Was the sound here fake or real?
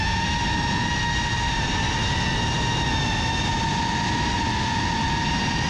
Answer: real